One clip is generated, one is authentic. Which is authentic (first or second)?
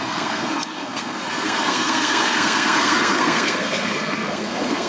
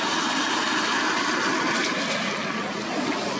second